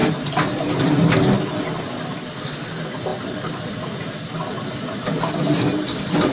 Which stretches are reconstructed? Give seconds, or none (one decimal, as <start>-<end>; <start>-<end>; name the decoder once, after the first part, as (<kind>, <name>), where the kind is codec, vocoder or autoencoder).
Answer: 0.0-0.9 (vocoder, BigVGAN v2); 3.1-3.7